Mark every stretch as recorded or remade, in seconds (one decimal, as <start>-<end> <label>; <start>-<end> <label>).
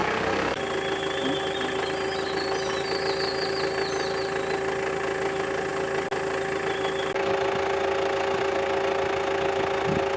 0.0-0.6 remade; 0.6-10.2 recorded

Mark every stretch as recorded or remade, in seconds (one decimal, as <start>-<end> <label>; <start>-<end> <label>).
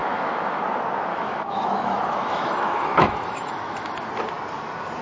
0.0-0.6 remade; 0.6-1.1 recorded; 1.1-4.1 remade; 4.1-5.0 recorded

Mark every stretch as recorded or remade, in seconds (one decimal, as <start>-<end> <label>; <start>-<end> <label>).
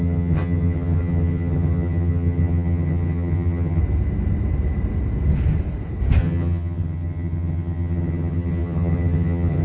0.0-3.8 remade; 3.8-6.2 recorded; 6.2-9.6 remade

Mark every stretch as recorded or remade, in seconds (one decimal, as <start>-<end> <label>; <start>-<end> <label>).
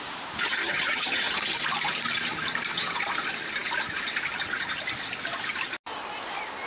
0.0-0.6 recorded; 0.6-1.3 remade; 1.3-6.7 recorded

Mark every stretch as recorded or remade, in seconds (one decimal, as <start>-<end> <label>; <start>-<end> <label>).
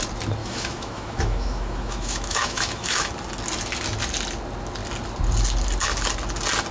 0.0-0.4 recorded; 0.4-3.1 remade; 3.1-6.7 recorded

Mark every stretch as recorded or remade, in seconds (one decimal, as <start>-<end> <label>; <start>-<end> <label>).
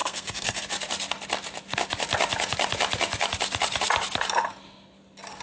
0.0-0.6 remade; 0.6-5.4 recorded